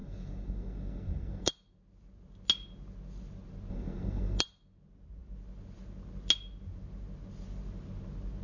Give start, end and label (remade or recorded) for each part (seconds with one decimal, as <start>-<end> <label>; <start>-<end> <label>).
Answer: 0.0-1.5 remade; 1.5-3.7 recorded; 3.7-4.4 remade; 4.4-8.4 recorded